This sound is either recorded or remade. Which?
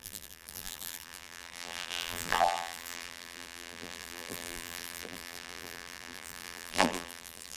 remade